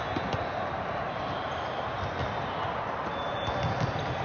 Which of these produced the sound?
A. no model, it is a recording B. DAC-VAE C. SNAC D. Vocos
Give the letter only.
A